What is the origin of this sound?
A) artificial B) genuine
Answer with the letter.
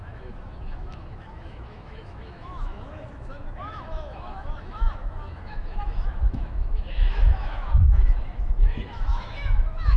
A